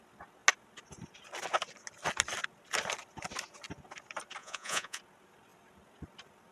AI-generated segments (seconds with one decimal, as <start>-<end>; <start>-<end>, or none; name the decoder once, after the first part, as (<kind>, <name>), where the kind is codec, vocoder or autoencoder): 4.4-5.0 (vocoder, Vocos)